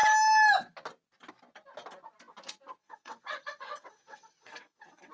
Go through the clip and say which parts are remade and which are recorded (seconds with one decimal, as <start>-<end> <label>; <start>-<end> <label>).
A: 0.0-2.8 recorded; 2.8-5.1 remade